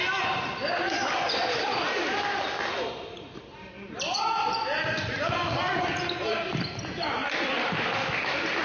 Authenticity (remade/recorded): remade